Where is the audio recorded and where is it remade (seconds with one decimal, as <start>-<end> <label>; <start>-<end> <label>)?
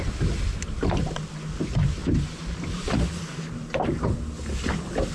0.0-5.1 recorded